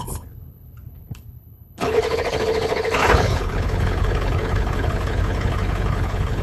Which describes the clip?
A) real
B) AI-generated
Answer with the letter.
B